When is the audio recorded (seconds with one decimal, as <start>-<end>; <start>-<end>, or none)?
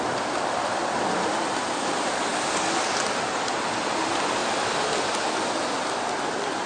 0.0-6.7